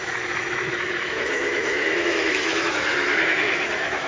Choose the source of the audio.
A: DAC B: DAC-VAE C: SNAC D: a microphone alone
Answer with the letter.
B